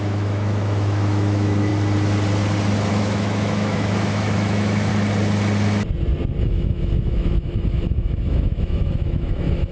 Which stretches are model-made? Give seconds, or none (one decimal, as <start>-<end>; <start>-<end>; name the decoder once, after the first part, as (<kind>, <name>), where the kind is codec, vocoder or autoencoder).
0.0-1.7 (autoencoder, DAC-VAE); 2.9-4.9; 6.4-9.7